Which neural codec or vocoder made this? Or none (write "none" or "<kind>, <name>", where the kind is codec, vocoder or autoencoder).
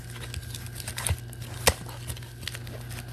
none